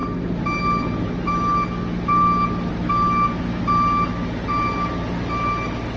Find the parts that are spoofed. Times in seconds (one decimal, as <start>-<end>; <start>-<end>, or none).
none